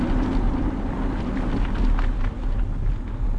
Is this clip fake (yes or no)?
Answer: no